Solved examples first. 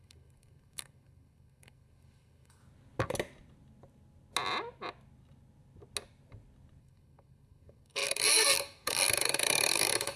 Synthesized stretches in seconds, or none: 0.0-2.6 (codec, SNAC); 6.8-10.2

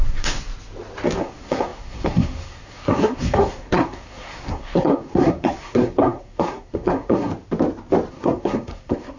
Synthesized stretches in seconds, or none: 0.0-0.5 (codec, SNAC); 1.2-7.3; 8.1-9.2

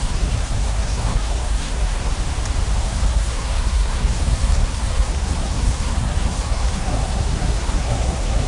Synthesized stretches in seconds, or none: 0.0-2.1 (codec, SNAC); 2.8-8.5

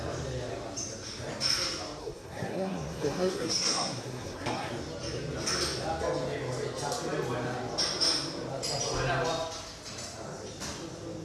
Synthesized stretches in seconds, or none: 2.0-4.7 (codec, SNAC)

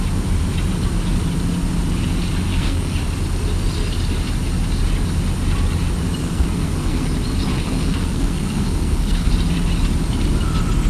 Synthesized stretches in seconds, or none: 2.5-3.0 (codec, SNAC); 6.2-7.1; 7.5-9.3

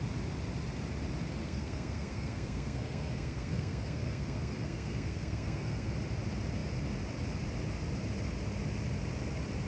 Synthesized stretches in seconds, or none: 1.4-5.9 (codec, SNAC)